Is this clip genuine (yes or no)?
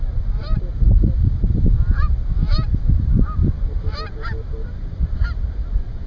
yes